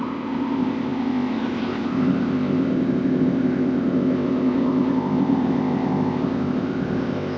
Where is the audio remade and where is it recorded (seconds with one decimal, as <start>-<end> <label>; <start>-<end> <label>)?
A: 0.0-7.4 remade